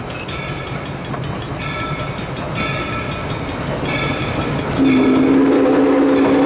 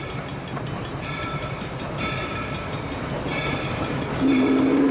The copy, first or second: second